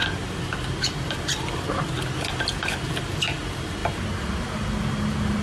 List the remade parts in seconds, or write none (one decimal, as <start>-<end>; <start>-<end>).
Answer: none

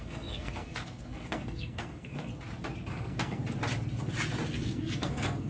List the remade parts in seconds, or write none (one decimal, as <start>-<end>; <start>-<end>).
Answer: 0.0-2.3; 2.9-3.4; 4.6-5.5

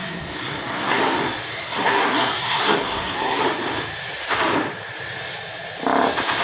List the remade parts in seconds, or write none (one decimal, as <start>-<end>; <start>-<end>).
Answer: 0.0-1.0; 1.5-3.4

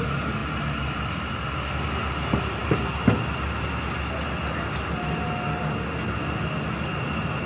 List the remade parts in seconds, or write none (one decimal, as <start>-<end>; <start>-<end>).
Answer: none

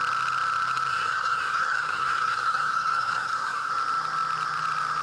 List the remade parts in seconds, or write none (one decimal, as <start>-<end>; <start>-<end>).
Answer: 0.9-3.7

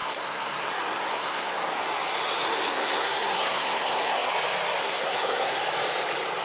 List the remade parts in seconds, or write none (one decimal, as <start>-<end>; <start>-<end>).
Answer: 0.0-0.7; 1.1-1.7; 2.7-4.3; 4.8-5.6

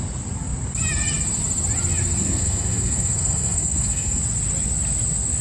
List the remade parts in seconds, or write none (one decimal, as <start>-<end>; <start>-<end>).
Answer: 2.2-4.2

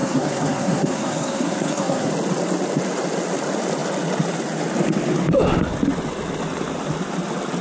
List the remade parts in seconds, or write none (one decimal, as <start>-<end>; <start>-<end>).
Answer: 0.0-2.1